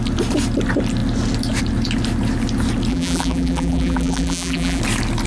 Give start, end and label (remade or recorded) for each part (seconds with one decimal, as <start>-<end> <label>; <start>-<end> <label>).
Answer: 0.0-2.9 recorded; 2.9-4.8 remade; 4.8-5.3 recorded